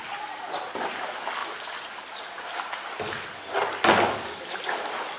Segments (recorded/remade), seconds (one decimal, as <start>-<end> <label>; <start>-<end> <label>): 0.0-5.2 recorded